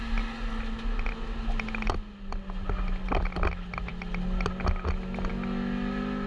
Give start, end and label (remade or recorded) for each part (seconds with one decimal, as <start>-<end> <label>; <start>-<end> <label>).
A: 0.0-6.3 recorded

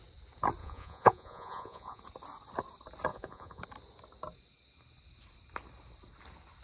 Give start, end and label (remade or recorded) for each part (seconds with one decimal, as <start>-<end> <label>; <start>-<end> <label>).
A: 0.0-0.6 recorded; 0.6-2.0 remade; 2.0-3.1 recorded; 3.1-3.6 remade; 3.6-6.6 recorded

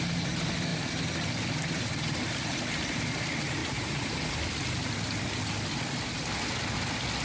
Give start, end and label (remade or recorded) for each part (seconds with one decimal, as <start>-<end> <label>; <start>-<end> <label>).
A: 0.0-3.6 recorded; 3.6-4.1 remade; 4.1-7.2 recorded

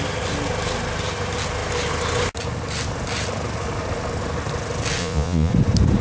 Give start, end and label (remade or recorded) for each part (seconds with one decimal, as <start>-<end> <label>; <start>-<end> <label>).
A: 0.0-5.0 recorded; 5.0-5.5 remade; 5.5-6.0 recorded

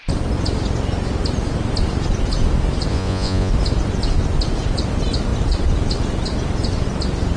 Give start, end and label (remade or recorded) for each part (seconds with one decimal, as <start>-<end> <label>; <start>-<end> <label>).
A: 0.0-2.9 recorded; 2.9-3.5 remade; 3.5-7.4 recorded

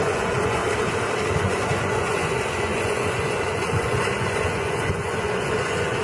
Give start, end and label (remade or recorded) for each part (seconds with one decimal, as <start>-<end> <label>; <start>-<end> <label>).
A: 0.0-0.6 remade; 0.6-1.4 recorded; 1.4-6.0 remade